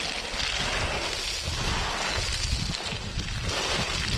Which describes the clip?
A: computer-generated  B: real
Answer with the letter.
B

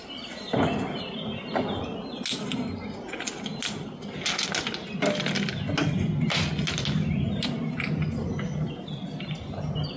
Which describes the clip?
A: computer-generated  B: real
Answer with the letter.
B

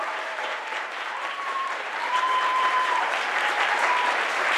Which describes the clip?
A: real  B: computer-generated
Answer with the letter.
B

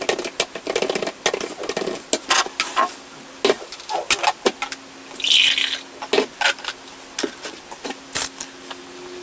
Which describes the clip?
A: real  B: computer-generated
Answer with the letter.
A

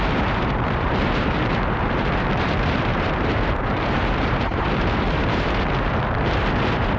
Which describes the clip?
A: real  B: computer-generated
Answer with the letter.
B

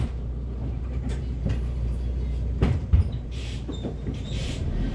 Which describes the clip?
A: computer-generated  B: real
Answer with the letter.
A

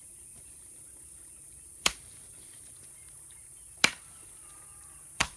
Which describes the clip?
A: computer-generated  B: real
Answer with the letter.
A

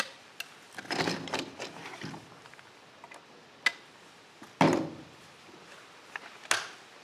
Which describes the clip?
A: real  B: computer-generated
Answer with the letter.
A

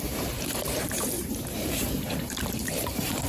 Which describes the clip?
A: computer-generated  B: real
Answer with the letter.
A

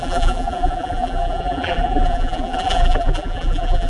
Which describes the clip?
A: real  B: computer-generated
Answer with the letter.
B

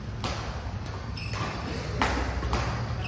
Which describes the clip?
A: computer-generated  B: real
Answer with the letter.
B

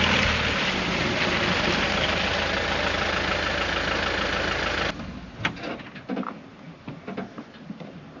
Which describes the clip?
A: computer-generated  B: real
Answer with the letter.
B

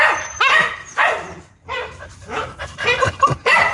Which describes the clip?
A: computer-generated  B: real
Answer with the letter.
A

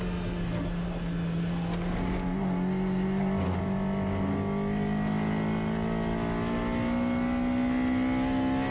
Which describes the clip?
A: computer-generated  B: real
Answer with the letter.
B